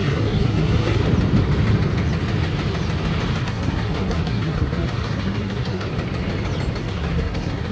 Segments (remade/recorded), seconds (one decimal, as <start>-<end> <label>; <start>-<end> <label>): 0.0-1.0 remade; 1.0-3.4 recorded; 3.4-5.9 remade; 5.9-6.8 recorded; 6.8-7.7 remade